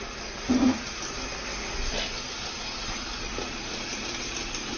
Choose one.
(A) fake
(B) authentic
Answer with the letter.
B